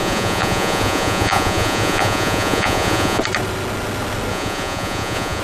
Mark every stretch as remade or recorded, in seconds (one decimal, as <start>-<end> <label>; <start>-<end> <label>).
0.0-3.2 remade; 3.2-4.3 recorded; 4.3-5.4 remade